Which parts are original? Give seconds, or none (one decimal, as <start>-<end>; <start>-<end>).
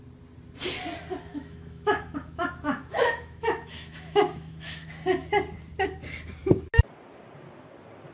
0.0-1.3; 4.9-8.1